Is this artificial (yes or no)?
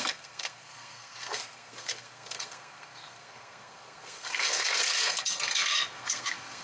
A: yes